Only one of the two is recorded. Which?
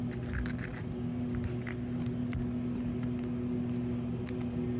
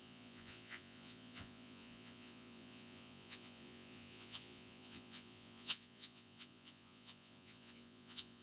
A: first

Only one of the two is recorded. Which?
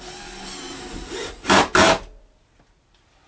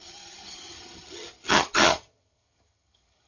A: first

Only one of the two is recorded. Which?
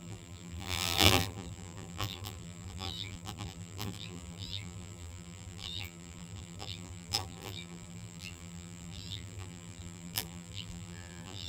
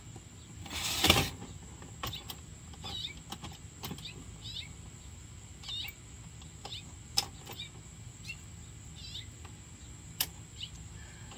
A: second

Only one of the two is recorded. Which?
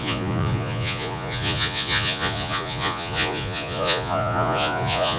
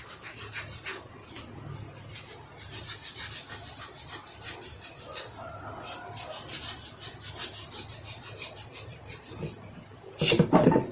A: second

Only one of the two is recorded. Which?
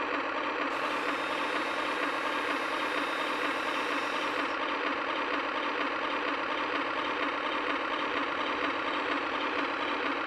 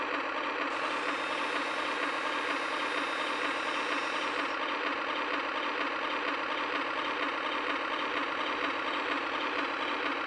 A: second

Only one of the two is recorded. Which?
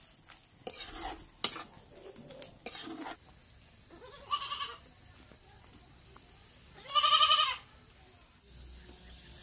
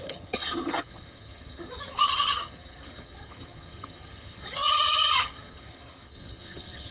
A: first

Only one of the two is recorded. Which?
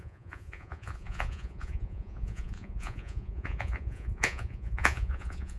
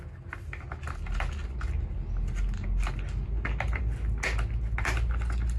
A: second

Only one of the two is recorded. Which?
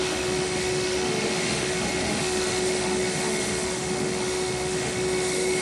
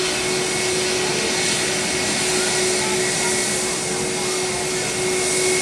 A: second